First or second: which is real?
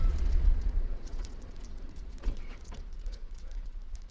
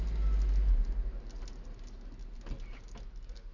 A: second